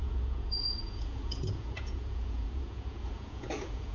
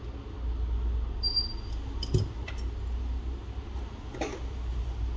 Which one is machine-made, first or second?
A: first